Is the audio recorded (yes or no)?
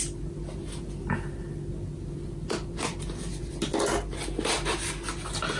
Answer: yes